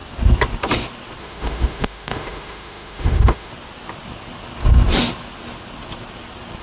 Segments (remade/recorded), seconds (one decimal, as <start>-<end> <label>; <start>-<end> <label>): 0.0-1.2 recorded; 1.2-3.5 remade; 3.5-6.6 recorded